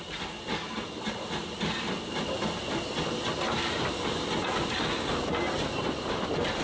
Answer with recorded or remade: recorded